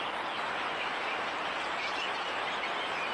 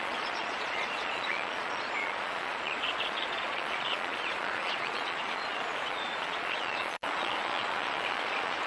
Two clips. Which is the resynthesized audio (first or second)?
second